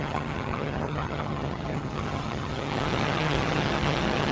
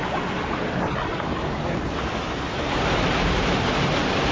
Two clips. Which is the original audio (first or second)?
second